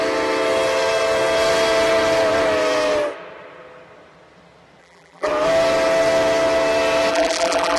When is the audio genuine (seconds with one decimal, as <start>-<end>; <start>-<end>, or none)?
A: 0.0-4.8; 5.3-7.1